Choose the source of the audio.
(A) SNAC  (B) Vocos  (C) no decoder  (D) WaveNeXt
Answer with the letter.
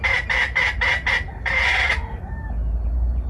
C